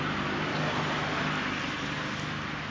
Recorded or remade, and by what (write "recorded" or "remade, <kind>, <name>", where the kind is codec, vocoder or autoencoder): recorded